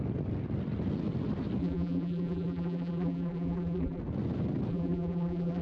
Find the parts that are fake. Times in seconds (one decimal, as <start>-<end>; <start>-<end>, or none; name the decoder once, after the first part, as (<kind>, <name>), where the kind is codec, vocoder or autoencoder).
1.6-4.0 (vocoder, BigVGAN v2); 4.7-5.6